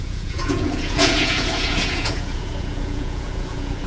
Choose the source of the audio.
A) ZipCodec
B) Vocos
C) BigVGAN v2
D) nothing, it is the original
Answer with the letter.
B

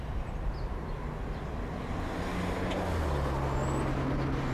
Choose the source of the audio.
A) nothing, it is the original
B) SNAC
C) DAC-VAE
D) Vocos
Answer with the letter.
A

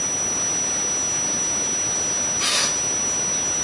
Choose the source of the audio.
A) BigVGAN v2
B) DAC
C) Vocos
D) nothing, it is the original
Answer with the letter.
D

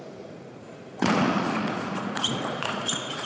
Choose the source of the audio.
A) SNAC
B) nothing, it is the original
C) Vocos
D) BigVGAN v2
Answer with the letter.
C